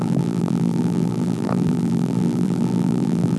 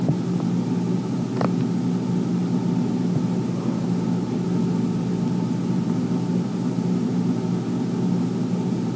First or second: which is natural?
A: second